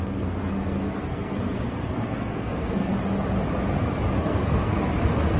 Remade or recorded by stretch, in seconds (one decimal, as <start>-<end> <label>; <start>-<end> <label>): 0.0-2.9 remade; 2.9-4.1 recorded; 4.1-5.4 remade